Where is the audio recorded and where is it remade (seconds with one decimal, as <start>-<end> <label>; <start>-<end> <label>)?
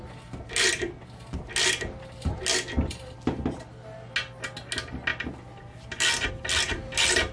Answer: 0.0-7.3 recorded